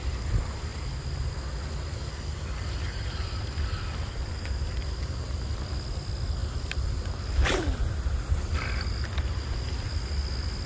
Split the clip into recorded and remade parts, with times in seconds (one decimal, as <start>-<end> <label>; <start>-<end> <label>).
0.0-10.7 recorded